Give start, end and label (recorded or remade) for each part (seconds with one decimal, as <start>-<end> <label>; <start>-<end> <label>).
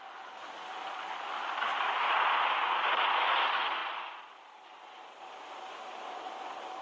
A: 0.0-6.8 recorded